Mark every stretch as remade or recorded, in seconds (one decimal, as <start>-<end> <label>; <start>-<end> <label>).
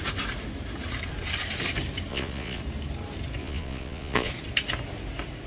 0.0-2.1 recorded; 2.1-2.6 remade; 2.6-3.4 recorded; 3.4-4.3 remade; 4.3-5.5 recorded